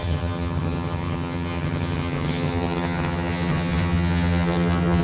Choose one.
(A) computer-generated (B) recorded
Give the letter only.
A